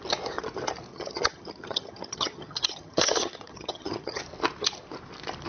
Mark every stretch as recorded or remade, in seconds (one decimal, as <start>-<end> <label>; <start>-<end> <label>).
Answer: 0.0-0.9 recorded; 0.9-4.2 remade; 4.2-5.5 recorded